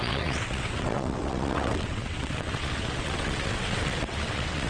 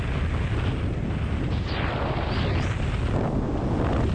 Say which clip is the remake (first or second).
first